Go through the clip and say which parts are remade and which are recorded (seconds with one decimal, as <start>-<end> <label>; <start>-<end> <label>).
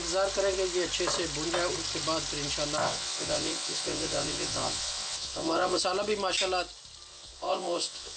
0.0-2.8 recorded; 2.8-5.8 remade; 5.8-7.1 recorded; 7.1-8.2 remade